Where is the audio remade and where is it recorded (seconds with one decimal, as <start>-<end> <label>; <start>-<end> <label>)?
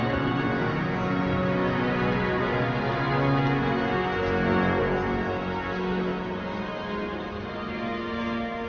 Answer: 0.0-8.7 recorded